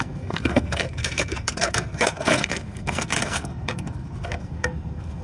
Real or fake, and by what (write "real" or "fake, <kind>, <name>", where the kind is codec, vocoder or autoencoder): fake, codec, SNAC